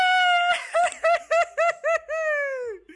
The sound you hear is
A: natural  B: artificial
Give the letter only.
A